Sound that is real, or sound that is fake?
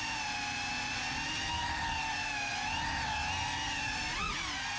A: real